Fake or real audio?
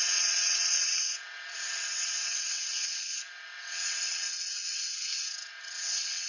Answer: fake